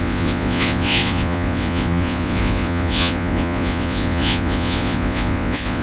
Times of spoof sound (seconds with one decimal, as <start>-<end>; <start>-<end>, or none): 0.0-5.8

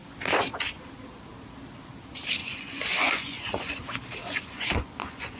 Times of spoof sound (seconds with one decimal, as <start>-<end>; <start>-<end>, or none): 2.4-3.8; 4.2-5.4

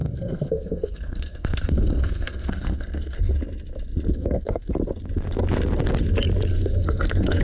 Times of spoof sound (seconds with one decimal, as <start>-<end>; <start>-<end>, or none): 0.0-3.3; 4.1-4.7; 6.5-7.4

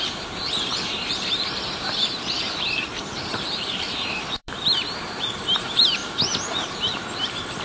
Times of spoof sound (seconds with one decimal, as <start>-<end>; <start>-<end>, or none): 0.0-6.0; 7.0-7.6

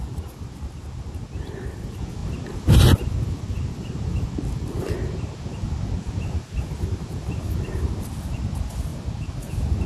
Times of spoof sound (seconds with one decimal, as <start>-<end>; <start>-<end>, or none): none

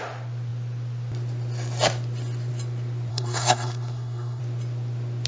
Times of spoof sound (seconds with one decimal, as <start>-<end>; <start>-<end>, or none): 3.1-4.4

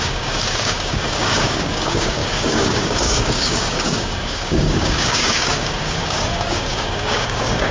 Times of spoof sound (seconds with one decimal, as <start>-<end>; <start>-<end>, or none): 0.0-7.7